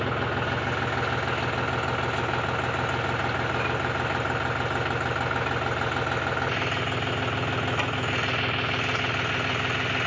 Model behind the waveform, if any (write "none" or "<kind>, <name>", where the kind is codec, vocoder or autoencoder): none